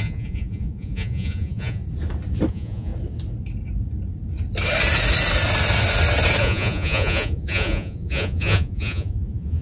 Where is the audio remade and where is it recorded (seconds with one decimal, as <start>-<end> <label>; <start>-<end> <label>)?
0.0-1.8 remade; 1.8-2.5 recorded; 2.5-2.9 remade; 2.9-6.4 recorded; 6.4-9.6 remade